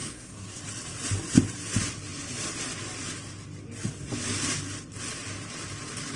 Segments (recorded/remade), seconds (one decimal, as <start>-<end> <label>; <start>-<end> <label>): 0.0-0.6 remade; 0.6-6.2 recorded